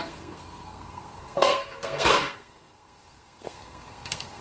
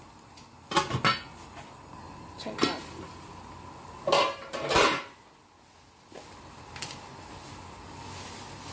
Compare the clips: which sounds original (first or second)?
second